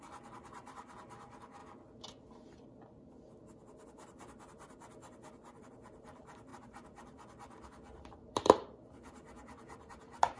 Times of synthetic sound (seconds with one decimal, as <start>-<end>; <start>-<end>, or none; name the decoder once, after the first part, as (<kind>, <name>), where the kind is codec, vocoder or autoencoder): 0.0-1.6 (vocoder, BigVGAN v2); 5.6-10.4